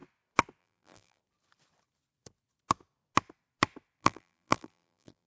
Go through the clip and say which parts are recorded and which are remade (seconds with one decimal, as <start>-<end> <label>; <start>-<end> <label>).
0.0-0.6 recorded; 0.6-1.2 remade; 1.2-4.0 recorded; 4.0-5.3 remade